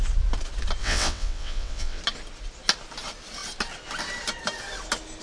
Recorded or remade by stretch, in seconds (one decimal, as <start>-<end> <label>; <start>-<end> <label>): 0.0-0.8 recorded; 0.8-2.0 remade; 2.0-5.2 recorded